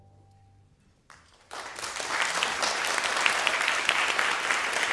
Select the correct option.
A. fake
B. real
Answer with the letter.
B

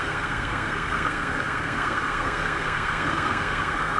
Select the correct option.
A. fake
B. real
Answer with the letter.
A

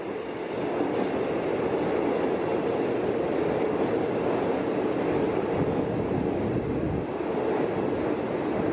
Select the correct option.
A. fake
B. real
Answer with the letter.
B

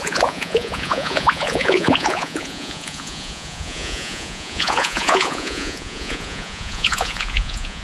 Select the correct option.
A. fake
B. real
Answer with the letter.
A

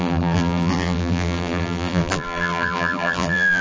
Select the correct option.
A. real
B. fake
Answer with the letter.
B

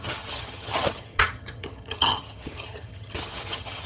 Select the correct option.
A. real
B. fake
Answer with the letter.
B